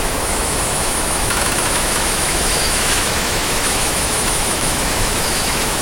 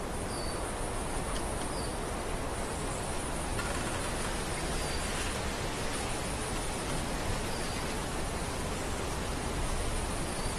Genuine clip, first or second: second